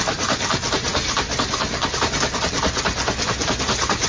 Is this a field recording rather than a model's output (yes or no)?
yes